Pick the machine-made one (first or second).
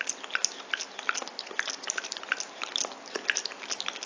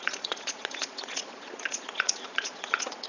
second